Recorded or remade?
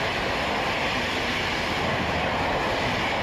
recorded